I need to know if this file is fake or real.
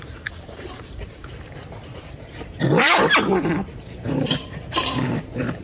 fake